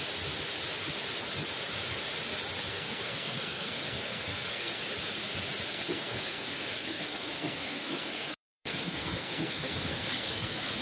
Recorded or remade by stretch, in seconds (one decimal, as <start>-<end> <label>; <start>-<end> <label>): 0.0-2.7 recorded; 2.7-4.8 remade; 4.8-5.7 recorded; 5.7-10.8 remade